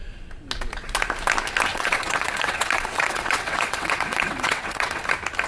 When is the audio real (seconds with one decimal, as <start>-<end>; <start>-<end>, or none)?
0.0-1.7; 5.0-5.5